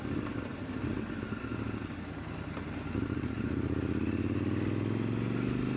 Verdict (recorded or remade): recorded